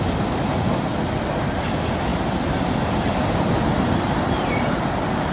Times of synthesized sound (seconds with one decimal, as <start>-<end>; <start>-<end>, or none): 0.9-1.5; 2.1-4.8